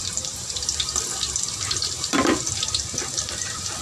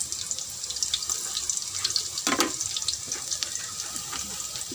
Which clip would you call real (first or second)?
second